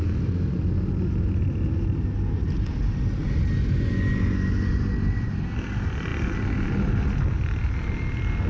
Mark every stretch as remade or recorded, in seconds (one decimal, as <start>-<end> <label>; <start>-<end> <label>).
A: 0.0-8.5 recorded